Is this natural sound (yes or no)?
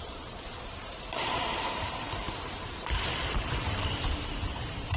no